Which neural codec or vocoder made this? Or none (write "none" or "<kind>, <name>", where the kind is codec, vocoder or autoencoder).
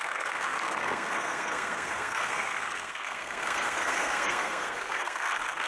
codec, SNAC